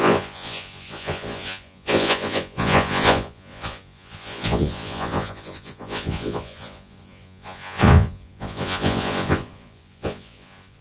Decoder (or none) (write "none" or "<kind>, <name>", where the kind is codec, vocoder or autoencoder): vocoder, Vocos